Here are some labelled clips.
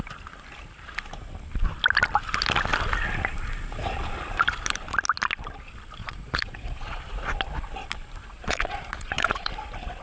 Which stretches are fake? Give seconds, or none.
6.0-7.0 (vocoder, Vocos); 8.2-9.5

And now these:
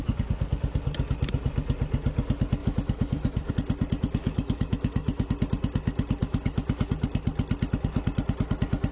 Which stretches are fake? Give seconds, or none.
2.6-3.5 (autoencoder, DAC-VAE); 4.2-5.3; 6.2-6.9

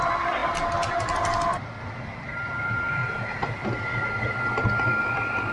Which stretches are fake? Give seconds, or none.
none

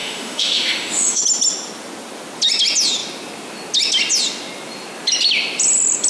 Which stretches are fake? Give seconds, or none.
0.0-1.2 (autoencoder, DAC-VAE)